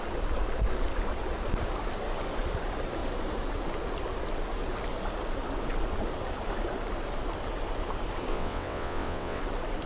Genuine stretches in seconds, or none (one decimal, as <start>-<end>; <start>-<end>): 0.0-8.3; 9.4-9.9